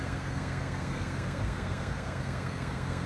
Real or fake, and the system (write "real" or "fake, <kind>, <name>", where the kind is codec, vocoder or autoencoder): fake, codec, SNAC